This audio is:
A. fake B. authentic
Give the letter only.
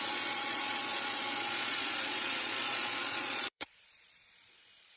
A